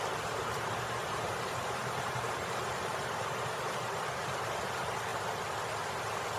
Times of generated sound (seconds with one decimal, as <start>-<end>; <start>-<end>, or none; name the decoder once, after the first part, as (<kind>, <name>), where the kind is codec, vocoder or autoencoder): 1.0-4.0 (vocoder, BigVGAN v2)